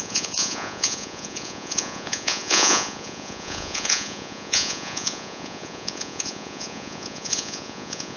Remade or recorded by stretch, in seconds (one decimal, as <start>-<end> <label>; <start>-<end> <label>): 0.0-8.2 remade